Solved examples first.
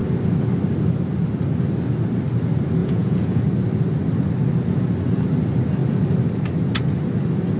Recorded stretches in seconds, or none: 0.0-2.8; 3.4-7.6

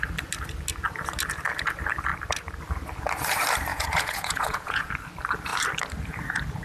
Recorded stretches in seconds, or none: 0.0-3.7; 4.9-6.6

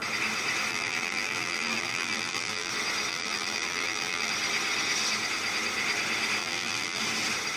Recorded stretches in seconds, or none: 0.0-0.7; 2.7-3.1; 4.3-6.4; 7.0-7.6

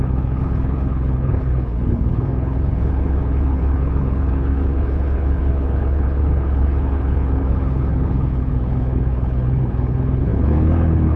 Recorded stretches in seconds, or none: none

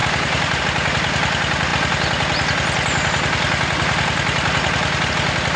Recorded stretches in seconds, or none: 0.6-5.6

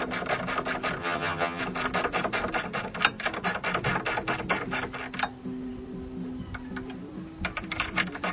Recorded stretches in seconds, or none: 0.0-1.0; 1.6-8.3

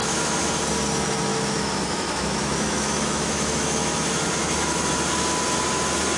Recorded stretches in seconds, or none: 0.5-1.3; 4.9-6.2

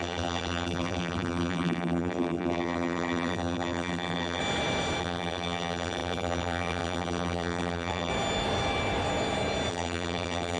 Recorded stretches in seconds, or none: 4.4-5.0; 8.1-9.7